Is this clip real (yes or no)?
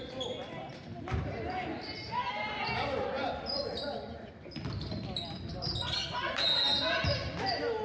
yes